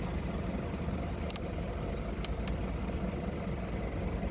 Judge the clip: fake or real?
real